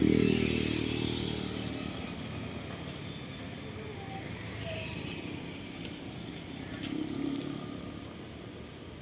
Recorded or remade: recorded